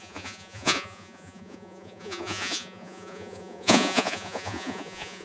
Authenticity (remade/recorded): remade